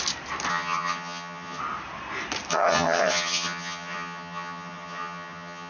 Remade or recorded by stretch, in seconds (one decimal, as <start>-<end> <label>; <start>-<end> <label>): 0.0-0.5 recorded; 0.5-1.6 remade; 1.6-2.5 recorded; 2.5-5.7 remade